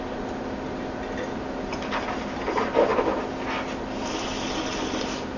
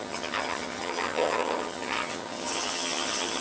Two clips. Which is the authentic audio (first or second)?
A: first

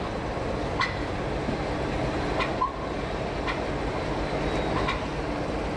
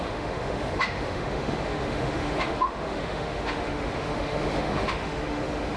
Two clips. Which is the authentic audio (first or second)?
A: first